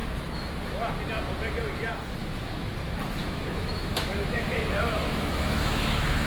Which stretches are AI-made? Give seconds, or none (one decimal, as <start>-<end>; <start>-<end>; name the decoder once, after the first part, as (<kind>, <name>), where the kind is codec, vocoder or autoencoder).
0.0-0.5 (autoencoder, DAC-VAE); 2.2-2.7; 3.2-6.3